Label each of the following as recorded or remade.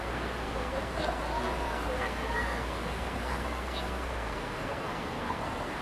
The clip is remade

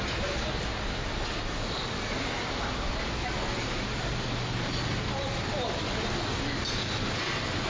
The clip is recorded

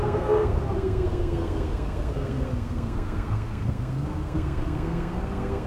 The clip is remade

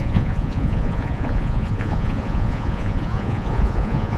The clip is remade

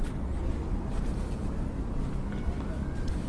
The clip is recorded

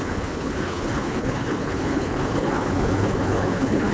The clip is remade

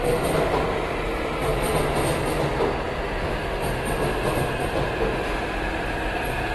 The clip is recorded